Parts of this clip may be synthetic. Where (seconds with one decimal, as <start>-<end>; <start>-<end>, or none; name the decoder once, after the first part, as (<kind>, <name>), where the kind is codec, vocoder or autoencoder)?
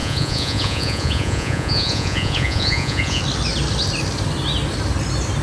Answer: 0.0-3.2 (vocoder, Vocos)